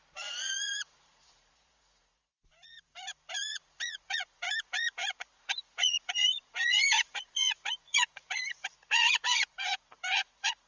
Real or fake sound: fake